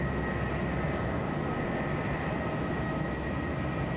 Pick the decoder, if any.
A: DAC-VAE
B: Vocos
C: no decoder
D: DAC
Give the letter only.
C